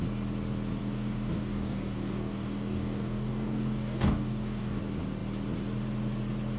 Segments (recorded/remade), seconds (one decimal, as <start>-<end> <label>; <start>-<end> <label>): 0.0-0.8 recorded; 0.8-4.8 remade; 4.8-6.6 recorded